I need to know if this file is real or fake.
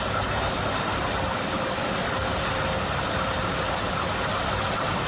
real